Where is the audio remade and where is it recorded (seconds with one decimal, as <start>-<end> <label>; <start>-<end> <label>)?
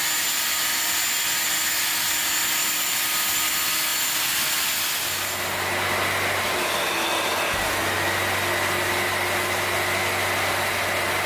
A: 0.0-11.3 recorded